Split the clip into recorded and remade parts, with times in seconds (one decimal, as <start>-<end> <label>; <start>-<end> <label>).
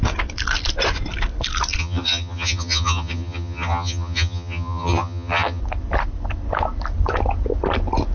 0.0-1.8 recorded; 1.8-5.6 remade; 5.6-8.1 recorded